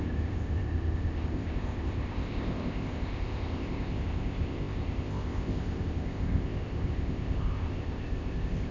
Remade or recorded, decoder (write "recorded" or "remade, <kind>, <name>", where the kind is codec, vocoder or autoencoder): remade, codec, ZipCodec